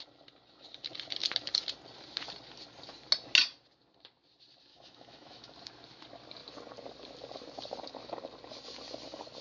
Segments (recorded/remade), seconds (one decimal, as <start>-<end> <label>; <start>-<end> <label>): 0.0-4.7 recorded; 4.7-5.5 remade; 5.5-9.4 recorded